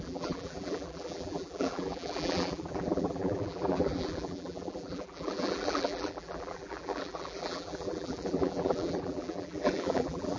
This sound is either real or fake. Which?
fake